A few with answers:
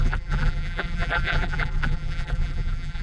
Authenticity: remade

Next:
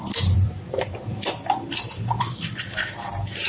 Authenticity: remade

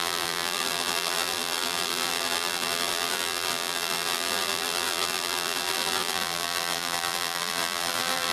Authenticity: remade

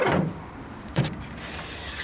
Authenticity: remade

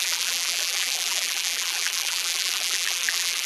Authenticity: remade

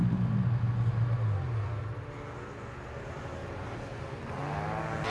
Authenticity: recorded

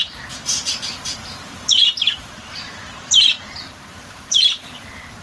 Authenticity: remade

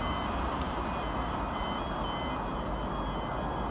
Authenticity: recorded